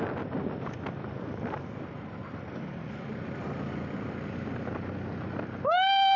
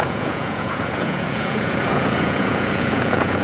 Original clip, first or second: first